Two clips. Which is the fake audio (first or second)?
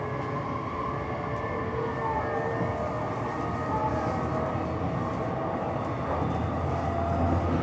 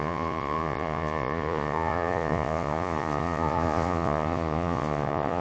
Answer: second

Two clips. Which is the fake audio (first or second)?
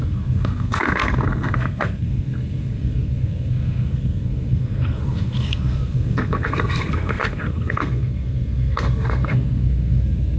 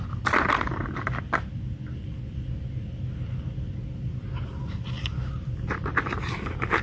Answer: first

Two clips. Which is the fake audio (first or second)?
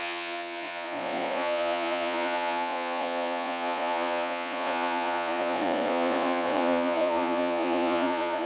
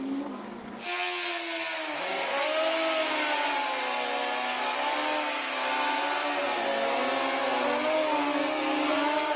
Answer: first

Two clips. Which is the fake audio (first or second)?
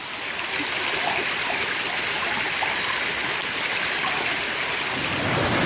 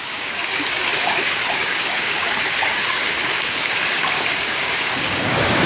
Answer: second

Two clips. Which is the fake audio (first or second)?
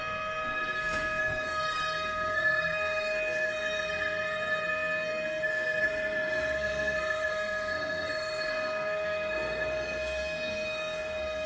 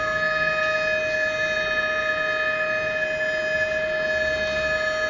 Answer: first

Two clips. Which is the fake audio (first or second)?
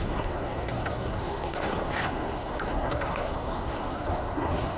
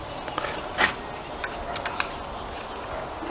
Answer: first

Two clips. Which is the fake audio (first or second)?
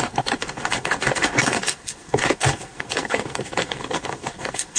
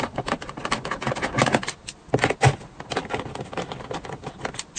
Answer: first